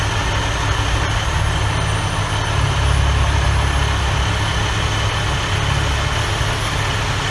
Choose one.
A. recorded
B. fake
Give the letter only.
A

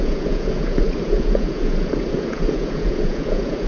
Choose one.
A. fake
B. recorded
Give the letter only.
A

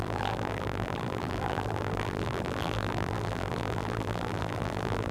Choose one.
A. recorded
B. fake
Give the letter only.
B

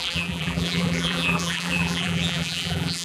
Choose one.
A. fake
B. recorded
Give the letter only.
A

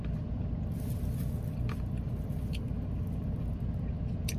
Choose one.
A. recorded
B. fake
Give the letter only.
A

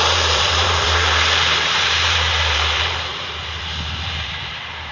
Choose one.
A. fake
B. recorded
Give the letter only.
A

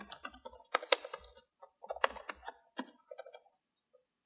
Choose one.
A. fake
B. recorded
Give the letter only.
B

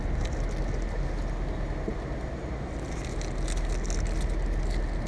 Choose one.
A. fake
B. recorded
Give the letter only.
B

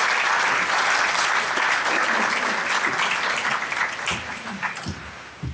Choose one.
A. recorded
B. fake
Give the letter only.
A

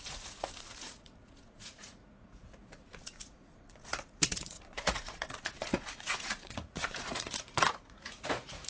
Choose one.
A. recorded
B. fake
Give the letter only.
B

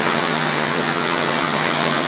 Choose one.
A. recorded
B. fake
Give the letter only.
B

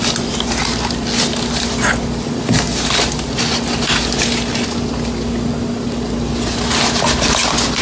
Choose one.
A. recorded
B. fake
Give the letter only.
A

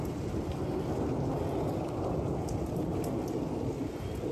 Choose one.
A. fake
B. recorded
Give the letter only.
B